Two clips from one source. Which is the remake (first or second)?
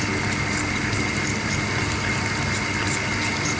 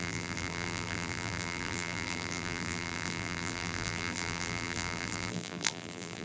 second